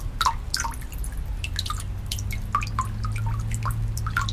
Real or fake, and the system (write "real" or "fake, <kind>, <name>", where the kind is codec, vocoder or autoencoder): real